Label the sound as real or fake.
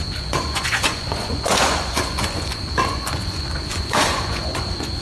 fake